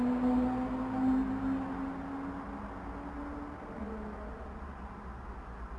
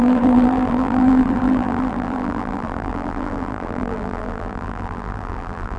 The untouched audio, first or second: first